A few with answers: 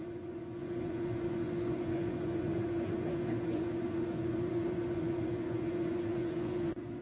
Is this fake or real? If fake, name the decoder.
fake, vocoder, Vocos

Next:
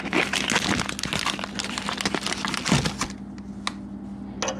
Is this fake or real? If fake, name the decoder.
real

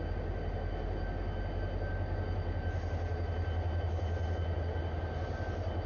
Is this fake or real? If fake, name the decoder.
real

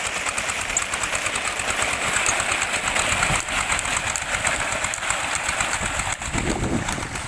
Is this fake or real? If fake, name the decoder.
real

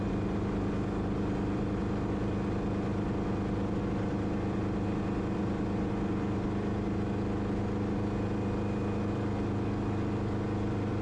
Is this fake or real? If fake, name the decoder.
real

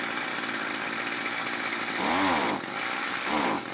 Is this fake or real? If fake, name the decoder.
real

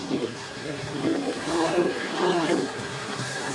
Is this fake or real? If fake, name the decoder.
fake, codec, SNAC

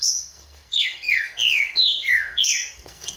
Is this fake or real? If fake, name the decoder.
fake, codec, SNAC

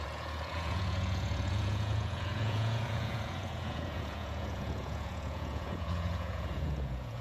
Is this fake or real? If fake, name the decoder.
fake, vocoder, Vocos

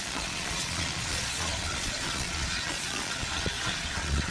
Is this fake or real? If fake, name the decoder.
fake, vocoder, Vocos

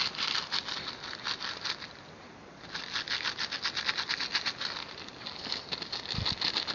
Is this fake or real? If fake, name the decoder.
real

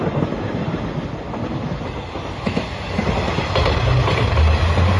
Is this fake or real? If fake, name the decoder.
real